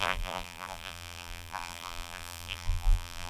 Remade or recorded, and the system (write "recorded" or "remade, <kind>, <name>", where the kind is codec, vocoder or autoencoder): remade, vocoder, BigVGAN v2